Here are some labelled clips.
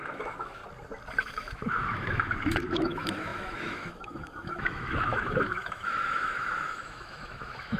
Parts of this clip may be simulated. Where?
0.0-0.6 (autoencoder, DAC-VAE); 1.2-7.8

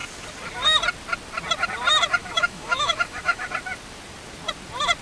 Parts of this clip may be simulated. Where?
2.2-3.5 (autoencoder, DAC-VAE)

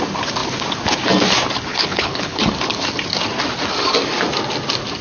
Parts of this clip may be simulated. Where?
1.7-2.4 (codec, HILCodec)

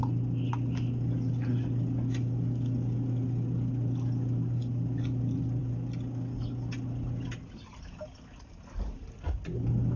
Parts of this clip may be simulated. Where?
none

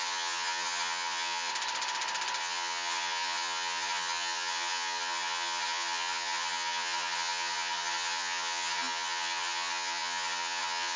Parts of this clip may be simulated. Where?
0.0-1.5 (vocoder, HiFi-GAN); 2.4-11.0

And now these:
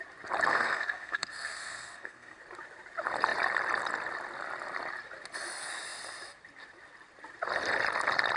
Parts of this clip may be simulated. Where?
0.5-2.4 (codec, SNAC)

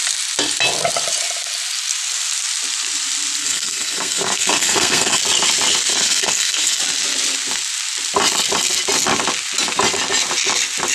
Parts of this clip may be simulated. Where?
3.4-5.2 (codec, SNAC); 5.9-6.8

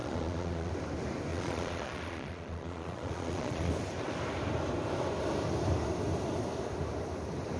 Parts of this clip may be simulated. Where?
0.0-0.7 (vocoder, Vocos); 1.3-3.7